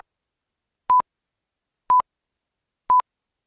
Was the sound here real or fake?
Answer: real